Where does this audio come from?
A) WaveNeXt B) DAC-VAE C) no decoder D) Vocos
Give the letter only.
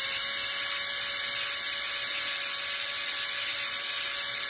C